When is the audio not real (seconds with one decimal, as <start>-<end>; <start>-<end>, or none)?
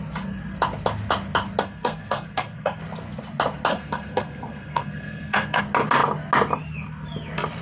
1.6-2.8; 3.7-5.6